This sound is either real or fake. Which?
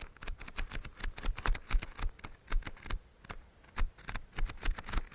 real